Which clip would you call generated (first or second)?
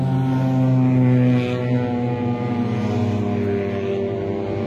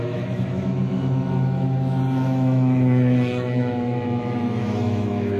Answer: second